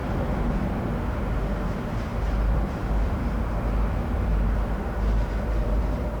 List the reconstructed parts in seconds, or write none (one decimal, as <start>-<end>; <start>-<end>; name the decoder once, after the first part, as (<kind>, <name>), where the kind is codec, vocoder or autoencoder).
0.0-0.5 (vocoder, BigVGAN v2); 2.1-5.8

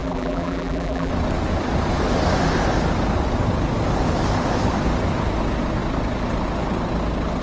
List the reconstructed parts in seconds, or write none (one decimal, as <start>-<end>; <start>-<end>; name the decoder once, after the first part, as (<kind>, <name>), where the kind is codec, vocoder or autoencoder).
0.0-1.1 (vocoder, BigVGAN v2)